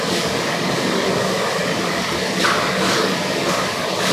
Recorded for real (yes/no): no